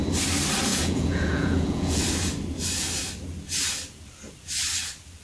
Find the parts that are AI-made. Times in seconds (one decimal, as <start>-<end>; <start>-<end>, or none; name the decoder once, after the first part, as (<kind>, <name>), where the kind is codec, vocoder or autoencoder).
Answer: 0.7-2.0 (vocoder, Vocos)